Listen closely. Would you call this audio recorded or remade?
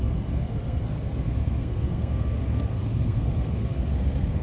remade